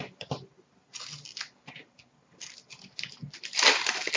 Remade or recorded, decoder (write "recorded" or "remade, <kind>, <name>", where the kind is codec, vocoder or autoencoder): recorded